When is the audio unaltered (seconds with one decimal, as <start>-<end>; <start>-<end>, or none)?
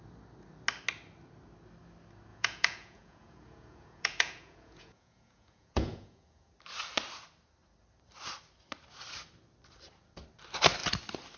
0.0-2.3; 6.5-11.4